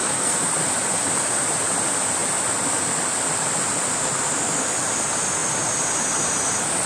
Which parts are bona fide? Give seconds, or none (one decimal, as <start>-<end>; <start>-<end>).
0.5-6.9